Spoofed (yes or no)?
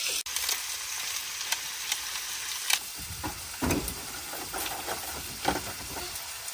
no